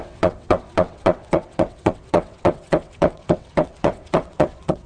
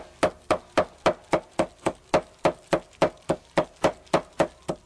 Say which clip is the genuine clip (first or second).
second